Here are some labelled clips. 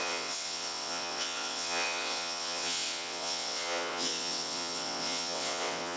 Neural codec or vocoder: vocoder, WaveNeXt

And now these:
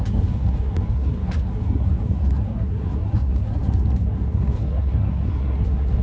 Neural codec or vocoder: codec, SNAC